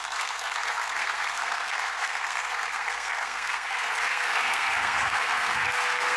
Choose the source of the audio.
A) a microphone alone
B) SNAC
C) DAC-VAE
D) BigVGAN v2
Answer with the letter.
B